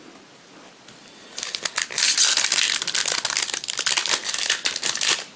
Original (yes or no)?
yes